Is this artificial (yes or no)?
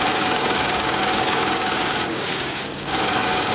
yes